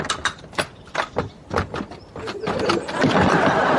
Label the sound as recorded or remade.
recorded